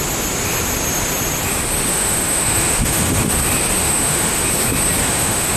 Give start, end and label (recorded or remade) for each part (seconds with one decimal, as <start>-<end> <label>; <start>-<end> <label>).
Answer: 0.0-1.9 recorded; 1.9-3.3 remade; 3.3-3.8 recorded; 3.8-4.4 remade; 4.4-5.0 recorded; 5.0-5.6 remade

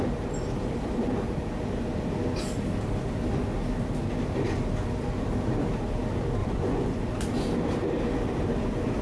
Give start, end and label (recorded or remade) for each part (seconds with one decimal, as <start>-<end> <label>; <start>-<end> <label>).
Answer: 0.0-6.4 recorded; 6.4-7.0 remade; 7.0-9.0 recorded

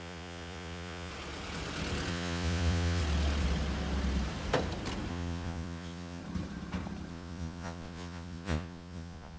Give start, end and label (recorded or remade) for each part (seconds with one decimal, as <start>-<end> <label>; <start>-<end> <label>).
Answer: 0.0-1.1 remade; 1.1-2.1 recorded; 2.1-3.0 remade; 3.0-5.1 recorded; 5.1-6.2 remade; 6.2-7.1 recorded; 7.1-9.4 remade